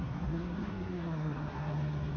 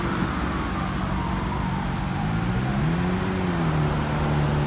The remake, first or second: first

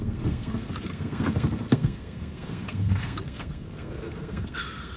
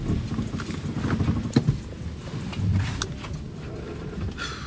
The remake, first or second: first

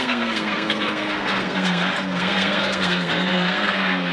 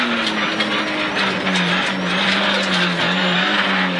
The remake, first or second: first